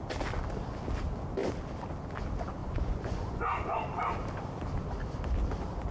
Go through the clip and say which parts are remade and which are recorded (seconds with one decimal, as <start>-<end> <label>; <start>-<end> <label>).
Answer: 0.0-2.6 recorded; 2.6-3.8 remade; 3.8-5.9 recorded